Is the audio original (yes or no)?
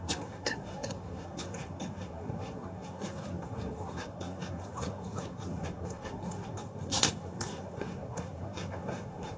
no